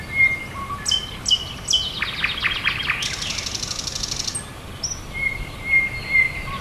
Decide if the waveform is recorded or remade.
recorded